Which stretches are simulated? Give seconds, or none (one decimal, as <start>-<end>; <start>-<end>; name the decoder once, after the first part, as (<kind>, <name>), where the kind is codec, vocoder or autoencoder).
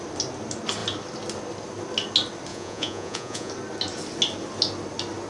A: 2.5-3.5 (vocoder, Vocos)